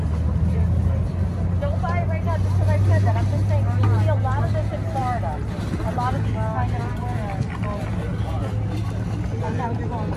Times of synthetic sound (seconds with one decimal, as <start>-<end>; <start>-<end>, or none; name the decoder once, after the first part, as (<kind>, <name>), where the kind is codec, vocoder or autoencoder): none